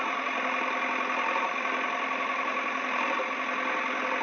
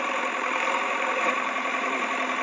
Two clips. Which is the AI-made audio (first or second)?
second